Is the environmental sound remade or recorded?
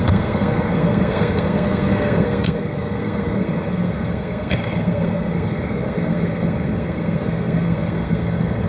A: remade